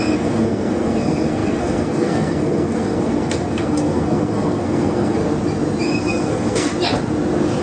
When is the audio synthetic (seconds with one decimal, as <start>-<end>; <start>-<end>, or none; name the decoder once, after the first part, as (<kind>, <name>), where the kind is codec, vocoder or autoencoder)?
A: 0.0-5.2 (codec, SNAC); 6.0-6.7